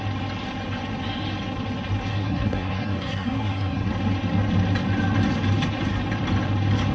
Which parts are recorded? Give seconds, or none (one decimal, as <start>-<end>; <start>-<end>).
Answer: 0.0-2.1; 3.9-6.9